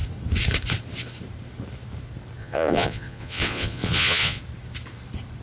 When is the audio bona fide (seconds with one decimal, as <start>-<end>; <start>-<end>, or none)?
0.0-2.4; 4.4-5.4